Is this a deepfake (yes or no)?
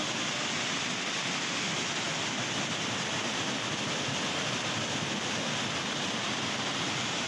no